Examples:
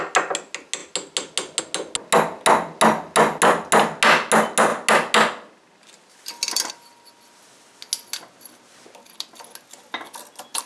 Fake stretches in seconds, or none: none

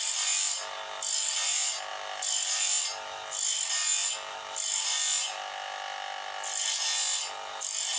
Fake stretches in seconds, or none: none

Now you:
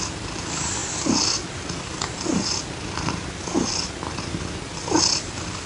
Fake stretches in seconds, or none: none